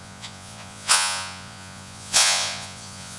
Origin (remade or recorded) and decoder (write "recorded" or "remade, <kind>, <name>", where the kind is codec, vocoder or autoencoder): remade, vocoder, Vocos